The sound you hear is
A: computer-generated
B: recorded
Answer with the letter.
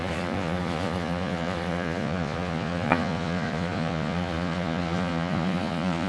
A